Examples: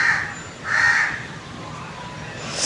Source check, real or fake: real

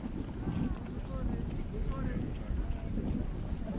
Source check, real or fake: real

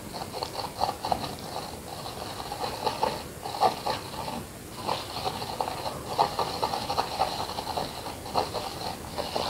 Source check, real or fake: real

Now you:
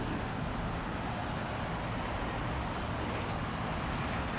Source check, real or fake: real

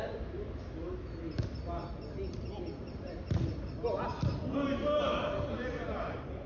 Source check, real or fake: real